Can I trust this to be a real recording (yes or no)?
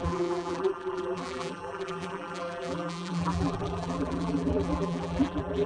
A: no